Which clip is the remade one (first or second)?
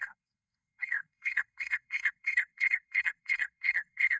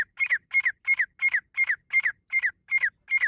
first